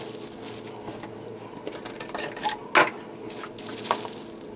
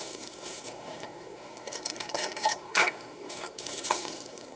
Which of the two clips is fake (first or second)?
second